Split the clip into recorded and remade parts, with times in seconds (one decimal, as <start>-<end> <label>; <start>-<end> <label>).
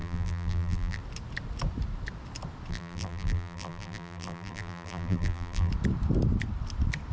0.0-1.0 remade; 1.0-2.7 recorded; 2.7-5.7 remade; 5.7-7.1 recorded